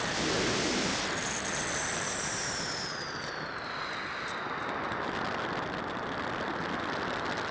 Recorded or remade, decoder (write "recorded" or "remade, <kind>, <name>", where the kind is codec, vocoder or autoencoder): recorded